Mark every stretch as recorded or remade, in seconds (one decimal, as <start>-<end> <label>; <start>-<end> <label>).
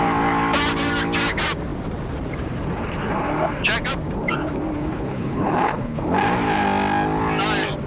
0.0-4.8 recorded; 4.8-6.0 remade; 6.0-7.9 recorded